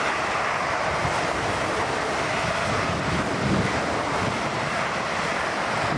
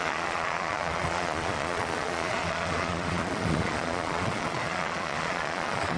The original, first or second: first